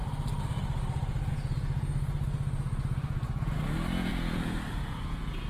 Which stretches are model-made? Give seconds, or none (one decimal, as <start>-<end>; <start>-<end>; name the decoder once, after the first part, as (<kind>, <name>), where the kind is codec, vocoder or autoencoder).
1.3-5.5 (vocoder, Vocos)